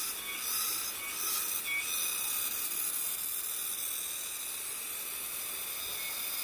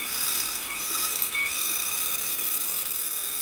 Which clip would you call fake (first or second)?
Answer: second